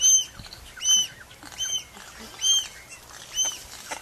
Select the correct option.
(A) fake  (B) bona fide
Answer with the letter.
B